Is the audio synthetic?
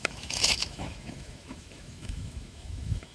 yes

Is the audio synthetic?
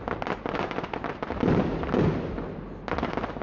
no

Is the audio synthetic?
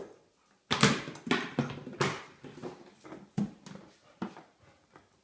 no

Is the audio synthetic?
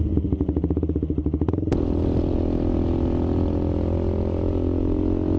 no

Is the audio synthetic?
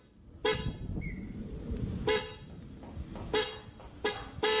no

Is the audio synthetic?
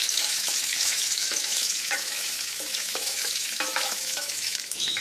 yes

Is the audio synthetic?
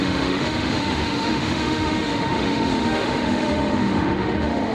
yes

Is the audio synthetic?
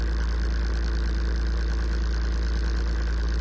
no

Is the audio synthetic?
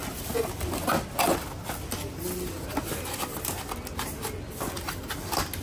no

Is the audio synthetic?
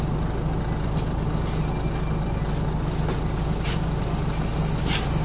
no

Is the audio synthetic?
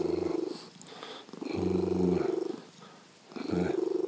no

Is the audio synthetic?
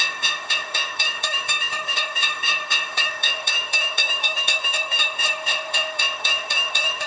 yes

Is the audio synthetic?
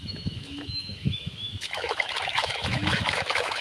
yes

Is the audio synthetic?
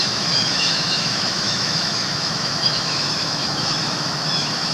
yes